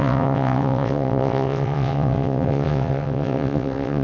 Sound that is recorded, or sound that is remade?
remade